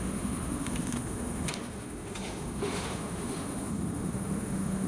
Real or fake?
fake